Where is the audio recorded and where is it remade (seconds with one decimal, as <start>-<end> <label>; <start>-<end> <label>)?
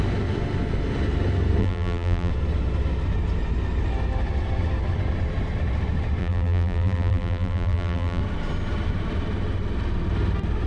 0.0-1.6 recorded; 1.6-2.3 remade; 2.3-6.2 recorded; 6.2-8.2 remade; 8.2-10.7 recorded